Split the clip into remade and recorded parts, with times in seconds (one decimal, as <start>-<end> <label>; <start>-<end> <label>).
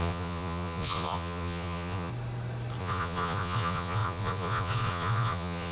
0.0-2.1 remade; 2.1-2.8 recorded; 2.8-5.7 remade